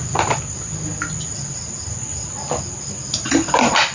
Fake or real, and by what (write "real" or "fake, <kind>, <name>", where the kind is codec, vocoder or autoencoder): real